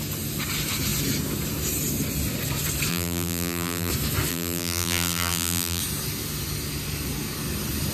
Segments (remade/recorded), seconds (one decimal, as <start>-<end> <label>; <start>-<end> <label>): 0.0-2.9 recorded; 2.9-3.9 remade; 3.9-4.3 recorded; 4.3-5.8 remade; 5.8-7.9 recorded